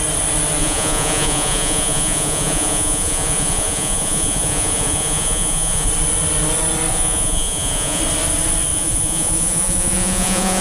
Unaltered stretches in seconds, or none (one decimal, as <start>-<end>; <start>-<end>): 0.0-0.6; 5.9-6.9; 8.0-8.7